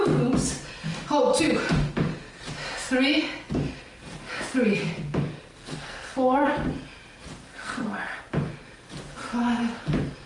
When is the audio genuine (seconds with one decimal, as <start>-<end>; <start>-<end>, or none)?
0.0-5.5; 6.5-7.5; 8.2-10.3